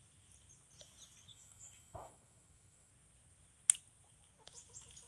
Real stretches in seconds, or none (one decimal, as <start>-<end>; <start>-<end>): 0.0-1.3; 2.9-5.1